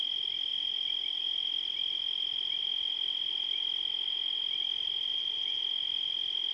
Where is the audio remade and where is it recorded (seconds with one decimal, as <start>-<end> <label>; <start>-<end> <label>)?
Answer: 0.0-5.1 recorded; 5.1-5.6 remade; 5.6-6.5 recorded